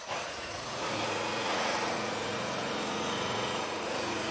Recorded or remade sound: remade